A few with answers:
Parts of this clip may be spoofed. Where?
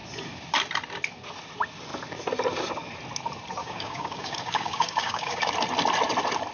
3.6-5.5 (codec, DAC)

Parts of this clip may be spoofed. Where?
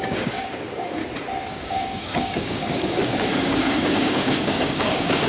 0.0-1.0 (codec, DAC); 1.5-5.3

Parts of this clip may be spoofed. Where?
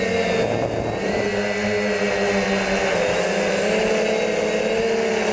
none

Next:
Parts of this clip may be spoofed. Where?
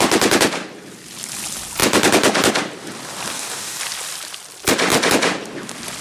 3.3-3.8 (codec, DAC)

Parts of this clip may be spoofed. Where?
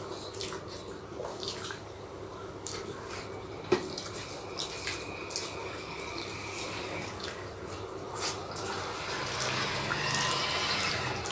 1.3-3.1 (codec, DAC); 5.6-7.5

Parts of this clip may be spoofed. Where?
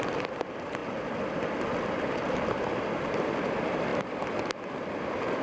none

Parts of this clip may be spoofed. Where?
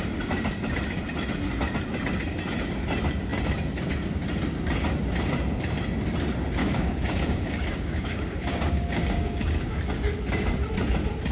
6.6-9.8 (codec, DAC)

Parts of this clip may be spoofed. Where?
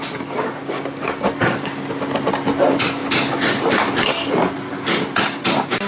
0.6-2.0 (codec, DAC)